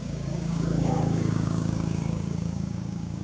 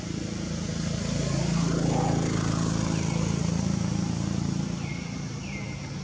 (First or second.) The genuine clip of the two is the second